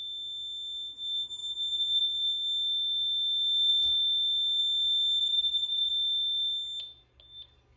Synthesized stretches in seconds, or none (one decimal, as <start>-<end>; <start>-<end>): 5.2-5.9